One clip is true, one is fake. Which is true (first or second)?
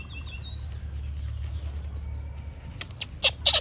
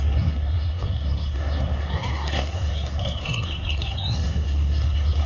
first